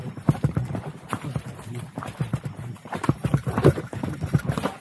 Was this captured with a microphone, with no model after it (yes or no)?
no